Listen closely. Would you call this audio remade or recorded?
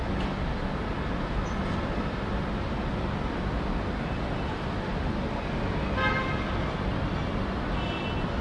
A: recorded